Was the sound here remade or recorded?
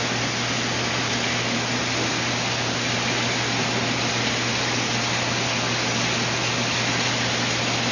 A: recorded